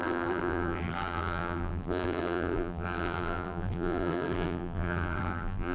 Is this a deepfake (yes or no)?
yes